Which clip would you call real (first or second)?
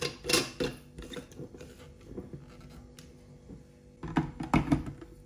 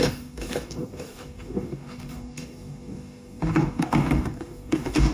first